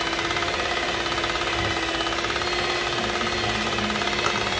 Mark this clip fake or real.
real